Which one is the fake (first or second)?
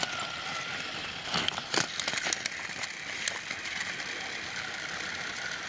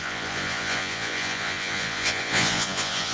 second